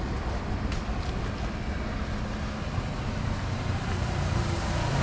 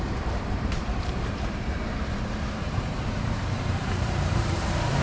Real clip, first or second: first